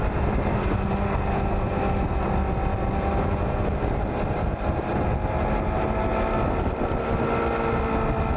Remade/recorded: recorded